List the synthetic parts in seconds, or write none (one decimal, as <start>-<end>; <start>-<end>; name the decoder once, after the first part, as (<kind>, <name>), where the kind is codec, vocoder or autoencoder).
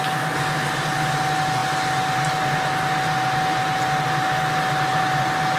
none